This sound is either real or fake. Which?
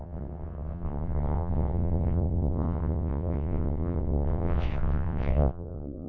fake